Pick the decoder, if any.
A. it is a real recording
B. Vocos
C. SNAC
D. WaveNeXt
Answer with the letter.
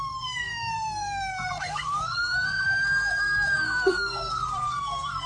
C